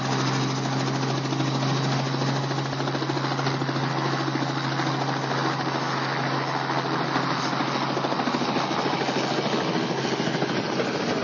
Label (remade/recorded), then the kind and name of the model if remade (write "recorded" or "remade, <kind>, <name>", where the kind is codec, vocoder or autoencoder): recorded